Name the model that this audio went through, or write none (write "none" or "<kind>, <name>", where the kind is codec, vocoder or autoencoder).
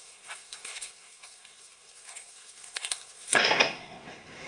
codec, SNAC